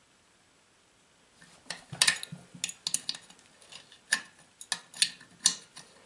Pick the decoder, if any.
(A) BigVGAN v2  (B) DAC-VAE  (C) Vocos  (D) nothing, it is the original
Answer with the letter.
D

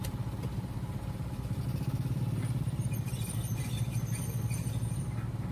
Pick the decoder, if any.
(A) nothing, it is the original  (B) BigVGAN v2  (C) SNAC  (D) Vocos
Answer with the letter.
A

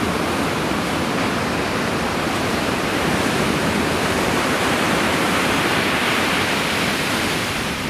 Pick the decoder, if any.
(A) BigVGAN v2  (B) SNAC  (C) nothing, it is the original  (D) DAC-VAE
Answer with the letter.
A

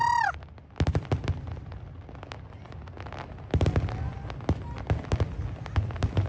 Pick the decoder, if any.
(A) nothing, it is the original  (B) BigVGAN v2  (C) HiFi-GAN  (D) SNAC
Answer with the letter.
A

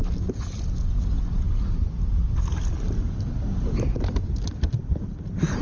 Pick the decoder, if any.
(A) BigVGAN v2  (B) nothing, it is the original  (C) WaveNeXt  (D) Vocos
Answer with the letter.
B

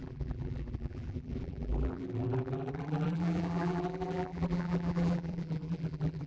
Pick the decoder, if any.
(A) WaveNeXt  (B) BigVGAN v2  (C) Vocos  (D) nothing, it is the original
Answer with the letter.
B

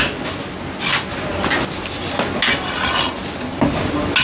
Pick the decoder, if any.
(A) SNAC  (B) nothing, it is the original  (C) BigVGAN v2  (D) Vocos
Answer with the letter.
B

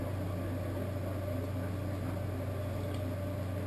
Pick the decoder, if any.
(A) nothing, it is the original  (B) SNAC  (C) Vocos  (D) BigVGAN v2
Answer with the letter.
A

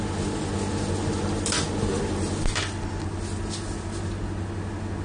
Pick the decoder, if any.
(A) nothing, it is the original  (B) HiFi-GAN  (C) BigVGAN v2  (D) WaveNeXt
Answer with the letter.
A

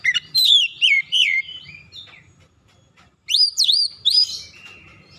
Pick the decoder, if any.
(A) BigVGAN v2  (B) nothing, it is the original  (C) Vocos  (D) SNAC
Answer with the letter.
A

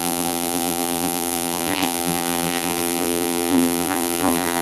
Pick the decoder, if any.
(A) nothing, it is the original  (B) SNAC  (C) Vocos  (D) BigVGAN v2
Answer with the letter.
D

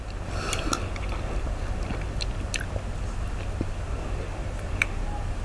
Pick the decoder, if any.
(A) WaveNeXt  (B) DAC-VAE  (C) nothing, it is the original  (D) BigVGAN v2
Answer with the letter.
C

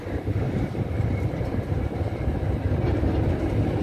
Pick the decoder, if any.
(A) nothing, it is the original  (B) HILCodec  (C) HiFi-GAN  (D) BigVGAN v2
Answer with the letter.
A